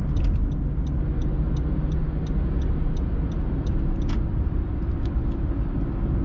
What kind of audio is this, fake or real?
real